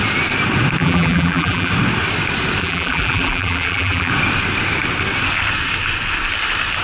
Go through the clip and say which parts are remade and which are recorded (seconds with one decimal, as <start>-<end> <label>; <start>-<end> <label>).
0.0-0.8 recorded; 0.8-1.7 remade; 1.7-2.6 recorded; 2.6-4.1 remade; 4.1-6.8 recorded